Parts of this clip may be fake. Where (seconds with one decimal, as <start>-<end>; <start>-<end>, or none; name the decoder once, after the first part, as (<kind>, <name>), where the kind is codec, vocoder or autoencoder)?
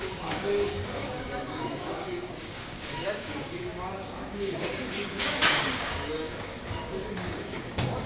0.0-8.1 (codec, DAC)